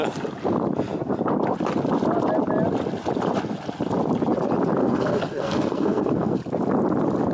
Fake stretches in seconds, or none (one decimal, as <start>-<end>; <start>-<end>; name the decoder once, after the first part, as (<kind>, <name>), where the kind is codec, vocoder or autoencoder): 4.8-6.4 (codec, SNAC)